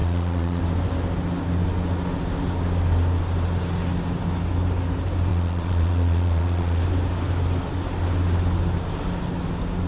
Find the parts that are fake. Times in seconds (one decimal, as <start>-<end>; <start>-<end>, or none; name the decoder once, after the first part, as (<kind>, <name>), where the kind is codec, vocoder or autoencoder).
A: 0.0-0.6 (vocoder, Vocos); 5.3-6.8